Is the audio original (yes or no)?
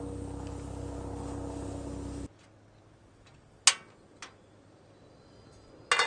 yes